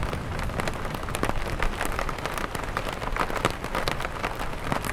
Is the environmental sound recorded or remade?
recorded